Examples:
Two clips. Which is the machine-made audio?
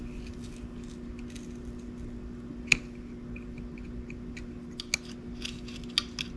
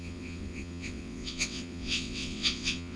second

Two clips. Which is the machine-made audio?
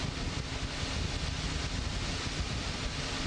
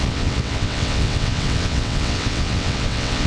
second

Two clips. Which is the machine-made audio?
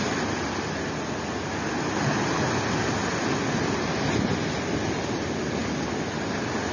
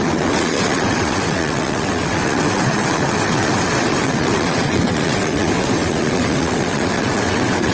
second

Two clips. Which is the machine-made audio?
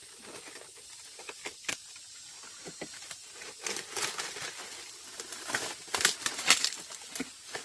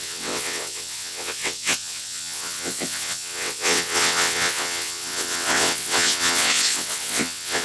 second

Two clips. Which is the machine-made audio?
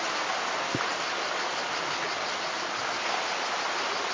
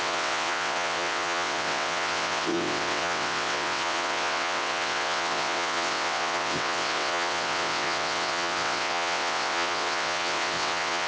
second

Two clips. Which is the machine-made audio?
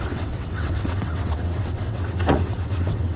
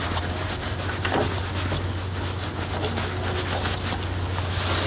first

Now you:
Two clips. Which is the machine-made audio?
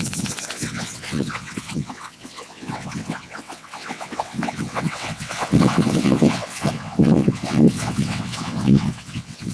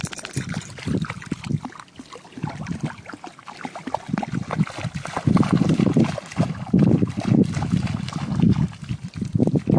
first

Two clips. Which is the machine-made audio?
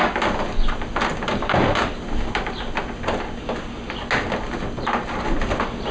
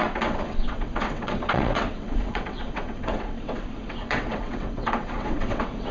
second